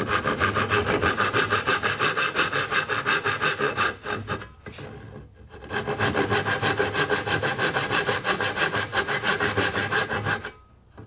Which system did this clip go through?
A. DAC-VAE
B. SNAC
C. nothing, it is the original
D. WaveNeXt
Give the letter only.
C